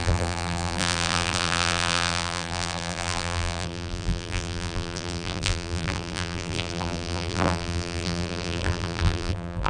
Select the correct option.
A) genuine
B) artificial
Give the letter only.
B